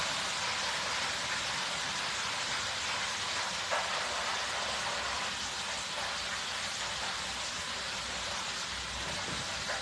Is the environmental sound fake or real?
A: real